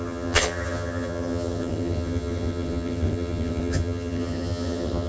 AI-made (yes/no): yes